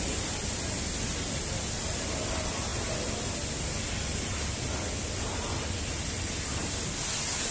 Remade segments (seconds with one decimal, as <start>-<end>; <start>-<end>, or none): none